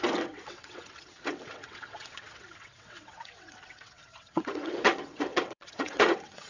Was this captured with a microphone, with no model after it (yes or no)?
no